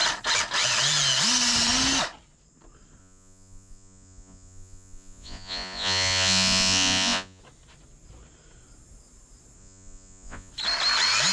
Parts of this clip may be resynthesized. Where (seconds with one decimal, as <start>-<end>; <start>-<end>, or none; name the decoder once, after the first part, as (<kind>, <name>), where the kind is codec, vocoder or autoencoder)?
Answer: 3.0-7.4 (vocoder, Vocos); 9.6-10.5